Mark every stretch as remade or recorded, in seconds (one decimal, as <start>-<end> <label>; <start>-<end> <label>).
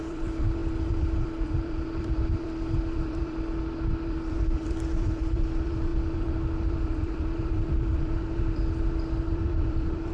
0.0-10.1 remade